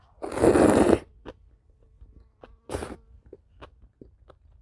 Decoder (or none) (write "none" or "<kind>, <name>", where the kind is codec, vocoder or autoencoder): none